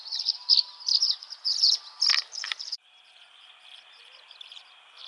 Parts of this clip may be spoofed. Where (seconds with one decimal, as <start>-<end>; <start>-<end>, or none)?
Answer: 0.4-2.2